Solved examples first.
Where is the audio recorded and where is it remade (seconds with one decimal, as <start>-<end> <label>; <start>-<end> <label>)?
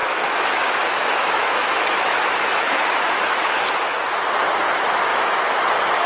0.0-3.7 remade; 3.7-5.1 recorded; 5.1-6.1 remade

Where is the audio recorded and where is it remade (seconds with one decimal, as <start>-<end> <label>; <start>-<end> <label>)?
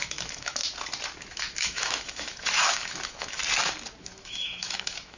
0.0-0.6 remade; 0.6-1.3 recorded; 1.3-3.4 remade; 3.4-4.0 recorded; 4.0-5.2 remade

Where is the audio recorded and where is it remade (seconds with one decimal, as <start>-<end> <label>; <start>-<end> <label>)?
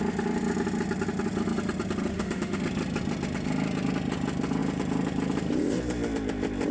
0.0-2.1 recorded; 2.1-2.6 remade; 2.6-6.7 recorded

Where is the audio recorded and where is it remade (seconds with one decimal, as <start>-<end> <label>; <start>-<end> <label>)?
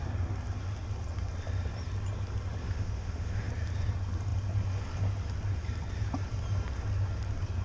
0.0-2.6 recorded; 2.6-3.5 remade; 3.5-7.6 recorded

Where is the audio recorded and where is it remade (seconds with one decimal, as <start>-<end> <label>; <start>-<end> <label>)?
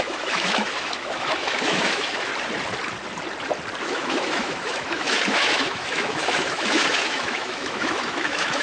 0.0-2.3 remade; 2.3-3.8 recorded; 3.8-8.6 remade